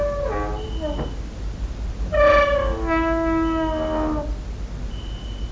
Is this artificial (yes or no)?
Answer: no